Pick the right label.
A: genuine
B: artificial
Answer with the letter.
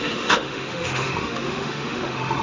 B